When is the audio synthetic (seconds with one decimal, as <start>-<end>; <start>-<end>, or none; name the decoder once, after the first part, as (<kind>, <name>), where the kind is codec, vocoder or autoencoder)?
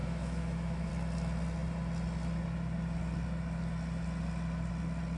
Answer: 0.0-0.9 (autoencoder, DAC-VAE)